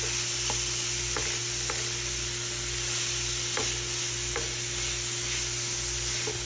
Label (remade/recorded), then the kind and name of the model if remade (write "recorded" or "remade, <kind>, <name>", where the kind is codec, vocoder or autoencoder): recorded